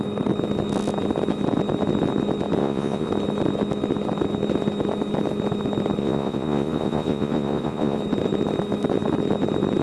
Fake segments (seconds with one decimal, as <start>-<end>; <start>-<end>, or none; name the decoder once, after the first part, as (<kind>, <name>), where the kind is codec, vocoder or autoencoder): 2.6-3.1 (vocoder, Vocos); 6.0-8.0